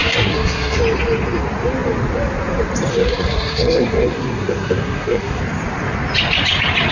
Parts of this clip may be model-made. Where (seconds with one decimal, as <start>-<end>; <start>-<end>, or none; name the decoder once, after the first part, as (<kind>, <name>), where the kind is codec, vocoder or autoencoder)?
0.0-0.8 (codec, SNAC); 2.9-5.4